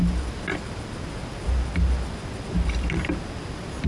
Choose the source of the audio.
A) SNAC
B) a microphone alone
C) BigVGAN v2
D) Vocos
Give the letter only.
B